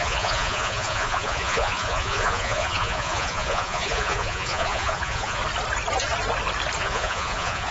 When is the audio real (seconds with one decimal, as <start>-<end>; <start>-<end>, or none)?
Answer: 5.4-6.8